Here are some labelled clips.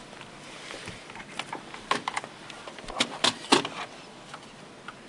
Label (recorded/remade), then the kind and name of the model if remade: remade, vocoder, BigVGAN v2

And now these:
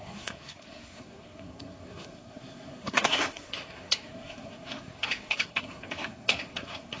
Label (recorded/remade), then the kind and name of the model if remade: remade, codec, SNAC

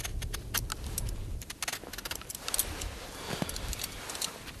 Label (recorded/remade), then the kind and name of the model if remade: recorded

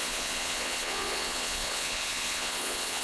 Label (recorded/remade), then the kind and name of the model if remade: remade, vocoder, Vocos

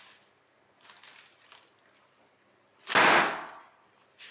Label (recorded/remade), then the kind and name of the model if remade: recorded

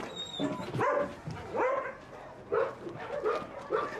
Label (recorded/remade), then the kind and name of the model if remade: recorded